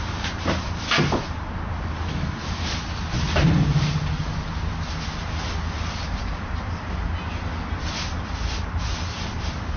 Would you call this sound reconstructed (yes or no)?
no